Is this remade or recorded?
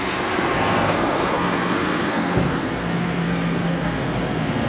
remade